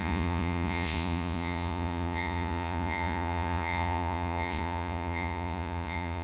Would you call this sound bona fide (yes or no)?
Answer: no